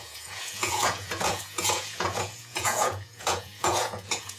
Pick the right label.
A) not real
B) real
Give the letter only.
A